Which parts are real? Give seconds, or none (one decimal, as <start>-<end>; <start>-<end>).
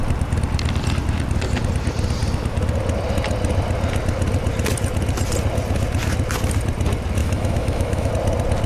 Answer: 0.0-7.2; 8.1-8.7